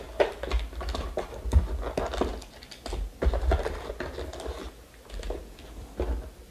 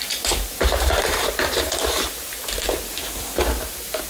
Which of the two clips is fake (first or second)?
second